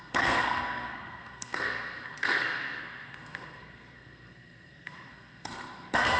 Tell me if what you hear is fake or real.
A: fake